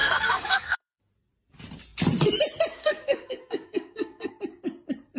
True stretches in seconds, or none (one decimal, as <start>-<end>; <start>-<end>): 1.0-2.8; 4.3-5.2